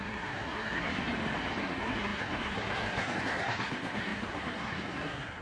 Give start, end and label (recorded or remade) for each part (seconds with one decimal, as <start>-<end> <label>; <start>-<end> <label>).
0.0-1.0 remade; 1.0-1.6 recorded; 1.6-5.4 remade

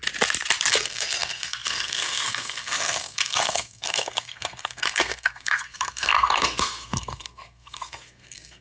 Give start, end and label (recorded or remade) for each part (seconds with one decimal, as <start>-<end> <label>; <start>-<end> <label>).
0.0-0.7 recorded; 0.7-8.6 remade

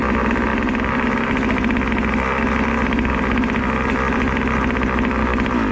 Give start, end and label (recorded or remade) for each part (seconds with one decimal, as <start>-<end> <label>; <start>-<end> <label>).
0.0-5.7 recorded

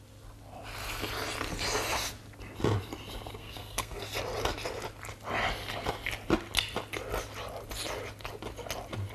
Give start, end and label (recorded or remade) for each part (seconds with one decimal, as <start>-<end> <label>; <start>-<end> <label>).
0.0-3.4 recorded; 3.4-4.1 remade; 4.1-9.1 recorded

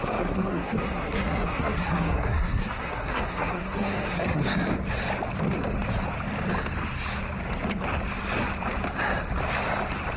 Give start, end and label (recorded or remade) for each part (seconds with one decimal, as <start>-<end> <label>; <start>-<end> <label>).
0.0-4.4 remade; 4.4-10.2 recorded

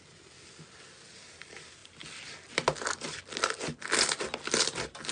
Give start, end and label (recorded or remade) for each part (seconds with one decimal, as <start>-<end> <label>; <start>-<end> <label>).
0.0-5.1 recorded

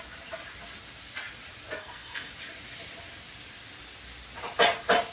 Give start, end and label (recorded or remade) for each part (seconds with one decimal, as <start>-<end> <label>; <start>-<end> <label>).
0.0-1.8 recorded; 1.8-2.3 remade; 2.3-5.1 recorded

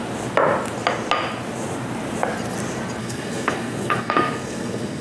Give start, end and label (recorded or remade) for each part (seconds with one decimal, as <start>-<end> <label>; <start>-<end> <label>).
0.0-3.0 recorded; 3.0-5.0 remade